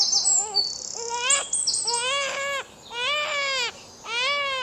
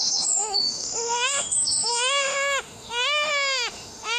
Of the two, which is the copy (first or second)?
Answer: second